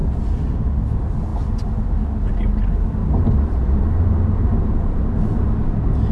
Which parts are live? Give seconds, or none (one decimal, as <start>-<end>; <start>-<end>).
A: 0.5-3.0; 5.0-6.1